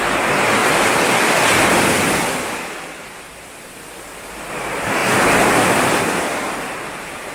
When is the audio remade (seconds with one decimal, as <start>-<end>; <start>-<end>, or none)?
0.0-0.6; 4.5-7.3